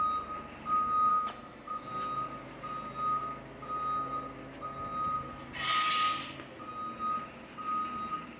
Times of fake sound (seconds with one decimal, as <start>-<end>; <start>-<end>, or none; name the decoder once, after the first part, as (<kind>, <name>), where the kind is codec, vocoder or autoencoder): 1.1-1.9 (autoencoder, DAC-VAE)